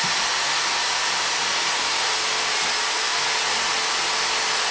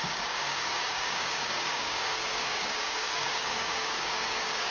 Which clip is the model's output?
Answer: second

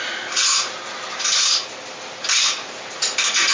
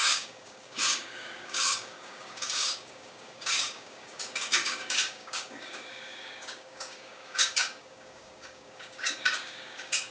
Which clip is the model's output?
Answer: second